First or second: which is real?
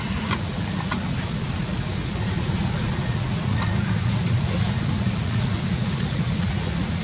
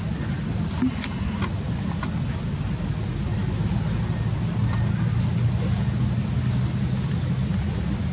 second